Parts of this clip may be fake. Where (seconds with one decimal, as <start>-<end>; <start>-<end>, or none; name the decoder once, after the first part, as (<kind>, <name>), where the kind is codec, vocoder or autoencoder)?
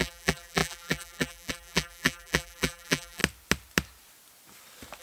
0.0-3.2 (vocoder, BigVGAN v2)